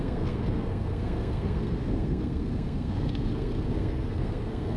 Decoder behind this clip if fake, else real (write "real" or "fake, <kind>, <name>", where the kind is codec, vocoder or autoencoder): fake, codec, SNAC